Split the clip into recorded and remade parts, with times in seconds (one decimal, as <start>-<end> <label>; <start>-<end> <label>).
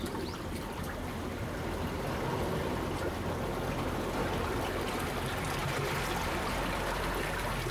0.0-7.7 recorded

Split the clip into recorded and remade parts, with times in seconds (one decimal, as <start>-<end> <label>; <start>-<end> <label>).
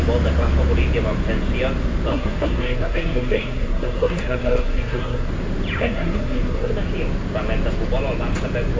0.0-2.1 recorded; 2.1-5.3 remade; 5.3-5.8 recorded; 5.8-6.7 remade; 6.7-8.8 recorded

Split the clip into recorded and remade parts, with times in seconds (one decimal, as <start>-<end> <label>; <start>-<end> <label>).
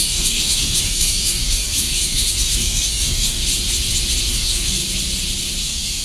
0.0-3.4 remade; 3.4-4.3 recorded; 4.3-4.8 remade; 4.8-5.6 recorded; 5.6-6.0 remade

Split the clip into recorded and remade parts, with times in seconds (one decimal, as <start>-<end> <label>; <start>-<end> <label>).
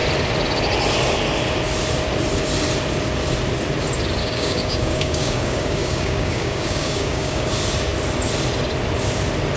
0.0-4.2 recorded; 4.2-7.5 remade; 7.5-9.6 recorded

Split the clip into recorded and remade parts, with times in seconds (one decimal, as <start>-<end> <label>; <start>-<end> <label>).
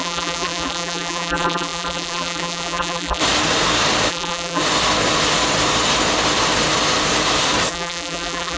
0.0-3.2 remade; 3.2-4.1 recorded; 4.1-4.6 remade; 4.6-7.7 recorded; 7.7-8.6 remade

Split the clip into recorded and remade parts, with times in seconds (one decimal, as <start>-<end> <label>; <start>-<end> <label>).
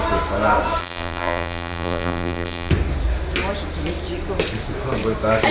0.0-0.8 recorded; 0.8-2.7 remade; 2.7-5.5 recorded